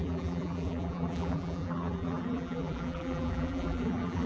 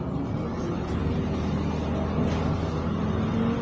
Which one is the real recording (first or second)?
second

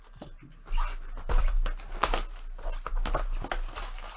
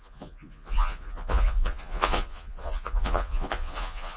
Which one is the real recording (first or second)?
first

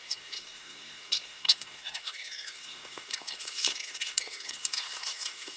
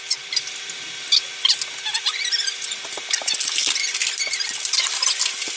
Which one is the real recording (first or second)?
second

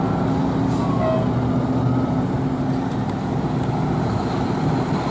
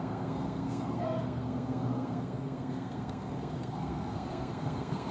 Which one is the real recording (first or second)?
first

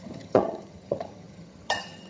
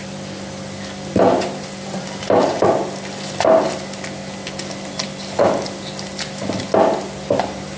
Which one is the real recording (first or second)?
second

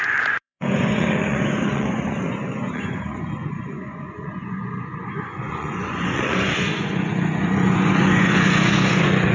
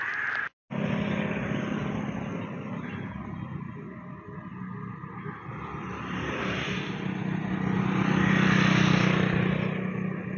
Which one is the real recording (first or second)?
second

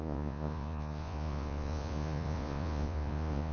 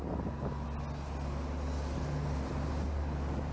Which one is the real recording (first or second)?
second